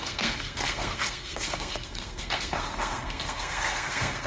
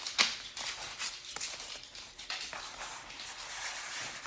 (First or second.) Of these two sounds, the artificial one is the first